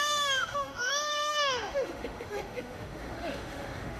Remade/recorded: remade